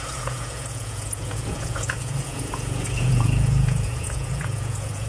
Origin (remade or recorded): remade